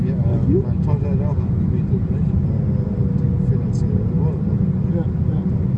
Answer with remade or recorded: recorded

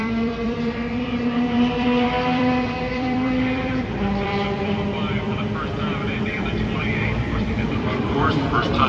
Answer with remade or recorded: remade